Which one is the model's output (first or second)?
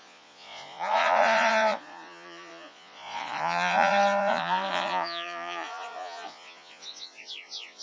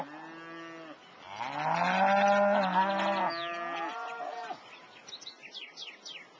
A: first